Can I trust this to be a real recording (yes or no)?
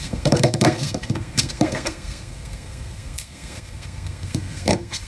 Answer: no